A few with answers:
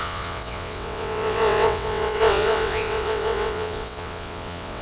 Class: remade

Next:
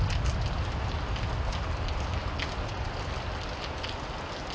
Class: recorded